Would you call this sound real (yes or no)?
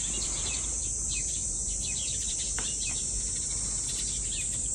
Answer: no